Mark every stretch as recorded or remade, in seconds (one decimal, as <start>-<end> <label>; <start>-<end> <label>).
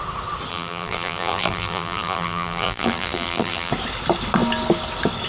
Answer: 0.0-0.5 recorded; 0.5-3.7 remade; 3.7-5.3 recorded